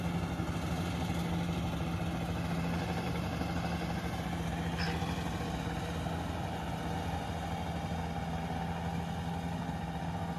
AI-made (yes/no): no